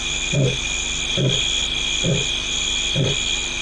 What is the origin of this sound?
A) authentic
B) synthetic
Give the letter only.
A